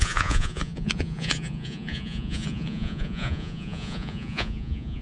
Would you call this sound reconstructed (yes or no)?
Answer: yes